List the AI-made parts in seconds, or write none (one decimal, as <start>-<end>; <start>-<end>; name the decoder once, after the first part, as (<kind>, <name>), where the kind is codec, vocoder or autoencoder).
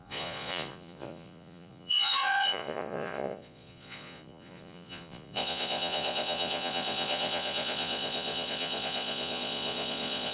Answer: 0.0-10.3 (vocoder, Vocos)